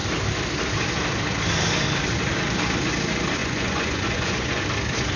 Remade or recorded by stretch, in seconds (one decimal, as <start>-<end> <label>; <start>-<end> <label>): 0.0-3.4 recorded; 3.4-4.6 remade; 4.6-5.2 recorded